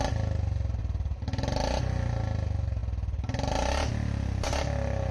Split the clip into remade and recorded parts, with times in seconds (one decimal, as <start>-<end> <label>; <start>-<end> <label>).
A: 0.0-5.1 recorded